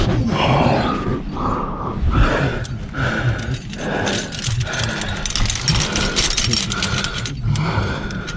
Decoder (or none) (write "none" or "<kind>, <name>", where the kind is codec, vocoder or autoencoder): none